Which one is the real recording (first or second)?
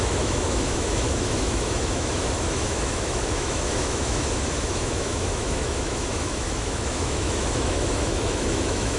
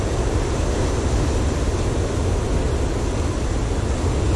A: second